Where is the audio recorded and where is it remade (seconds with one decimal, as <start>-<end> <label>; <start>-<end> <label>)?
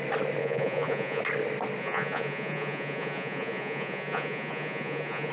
0.0-0.4 recorded; 0.4-1.2 remade; 1.2-1.8 recorded; 1.8-5.3 remade